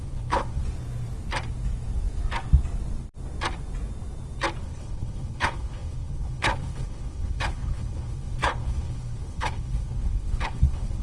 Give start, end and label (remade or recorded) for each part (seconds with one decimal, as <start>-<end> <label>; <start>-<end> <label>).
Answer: 0.0-0.6 remade; 0.6-4.6 recorded; 4.6-11.0 remade